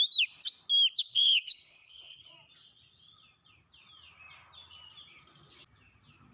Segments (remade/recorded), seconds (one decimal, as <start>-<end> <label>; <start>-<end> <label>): 0.0-1.0 recorded; 1.0-2.3 remade; 2.3-6.3 recorded